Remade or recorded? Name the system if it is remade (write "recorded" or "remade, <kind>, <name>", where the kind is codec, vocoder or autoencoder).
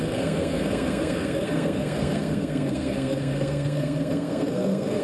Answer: remade, codec, SNAC